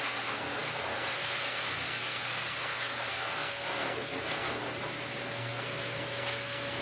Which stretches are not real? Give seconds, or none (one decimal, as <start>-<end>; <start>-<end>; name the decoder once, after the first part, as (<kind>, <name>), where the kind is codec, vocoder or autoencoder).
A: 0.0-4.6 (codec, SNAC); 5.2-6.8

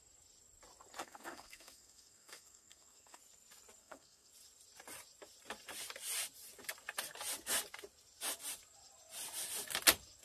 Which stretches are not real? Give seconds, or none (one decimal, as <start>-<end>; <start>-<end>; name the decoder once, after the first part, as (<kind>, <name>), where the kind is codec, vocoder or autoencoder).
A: 1.0-3.2 (codec, SNAC); 3.8-4.3

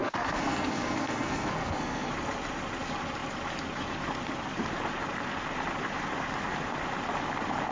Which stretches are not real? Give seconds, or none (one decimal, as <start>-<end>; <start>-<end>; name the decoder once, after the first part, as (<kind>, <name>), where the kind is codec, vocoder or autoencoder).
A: 0.0-2.1 (codec, SNAC)

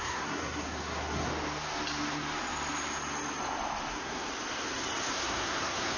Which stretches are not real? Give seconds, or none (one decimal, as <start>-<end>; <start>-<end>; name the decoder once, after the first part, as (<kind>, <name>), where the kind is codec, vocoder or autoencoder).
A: 0.0-1.3 (codec, SNAC); 3.9-4.3; 5.1-6.0

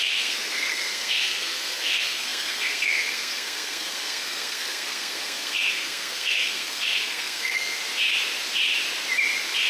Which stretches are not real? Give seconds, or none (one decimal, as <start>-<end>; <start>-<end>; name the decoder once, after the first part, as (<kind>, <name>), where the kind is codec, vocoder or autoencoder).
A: 0.0-7.8 (codec, SNAC)

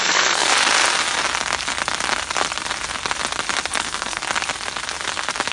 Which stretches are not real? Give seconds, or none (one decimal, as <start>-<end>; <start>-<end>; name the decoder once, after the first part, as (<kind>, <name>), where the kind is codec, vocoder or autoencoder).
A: 0.0-0.5 (codec, SNAC); 3.8-4.2